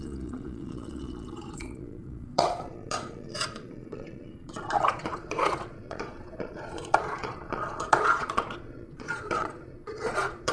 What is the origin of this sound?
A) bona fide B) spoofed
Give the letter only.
B